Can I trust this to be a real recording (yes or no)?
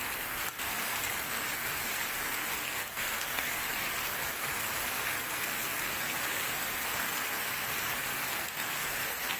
no